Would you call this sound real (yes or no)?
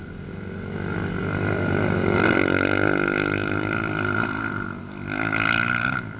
yes